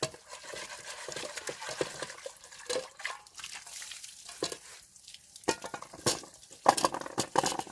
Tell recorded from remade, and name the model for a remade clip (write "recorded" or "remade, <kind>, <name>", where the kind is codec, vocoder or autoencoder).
recorded